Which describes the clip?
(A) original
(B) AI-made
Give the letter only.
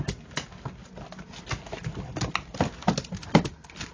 A